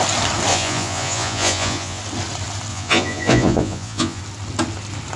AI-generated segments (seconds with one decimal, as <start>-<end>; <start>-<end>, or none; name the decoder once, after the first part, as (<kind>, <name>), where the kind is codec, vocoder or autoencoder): 0.5-2.0 (vocoder, Vocos); 2.7-4.2